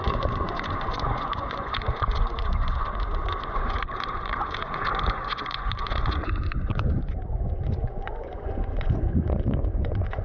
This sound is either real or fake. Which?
fake